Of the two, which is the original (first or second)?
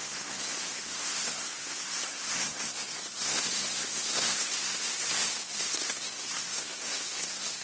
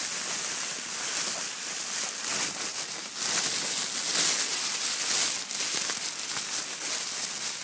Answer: second